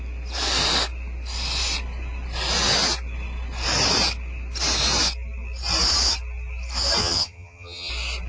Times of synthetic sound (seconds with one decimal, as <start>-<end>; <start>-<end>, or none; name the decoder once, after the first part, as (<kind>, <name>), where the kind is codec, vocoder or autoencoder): 7.0-7.9 (vocoder, HiFi-GAN)